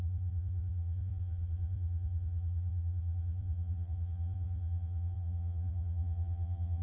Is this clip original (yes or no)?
no